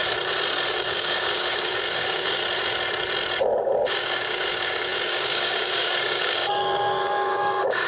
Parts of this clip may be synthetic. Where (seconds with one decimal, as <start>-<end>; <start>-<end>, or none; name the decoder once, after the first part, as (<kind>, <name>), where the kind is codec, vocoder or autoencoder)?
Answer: 0.7-2.4 (codec, DAC); 3.6-7.9